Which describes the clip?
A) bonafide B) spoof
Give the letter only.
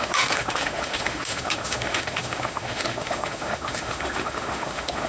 B